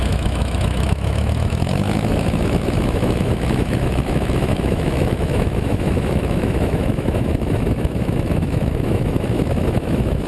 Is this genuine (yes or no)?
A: no